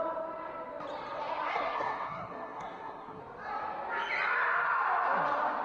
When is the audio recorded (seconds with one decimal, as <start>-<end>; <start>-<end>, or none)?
0.0-1.5; 3.2-5.6